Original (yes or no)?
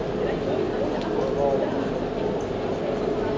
yes